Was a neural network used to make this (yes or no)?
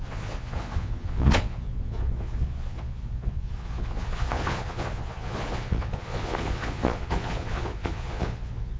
yes